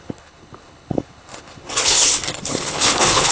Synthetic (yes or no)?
yes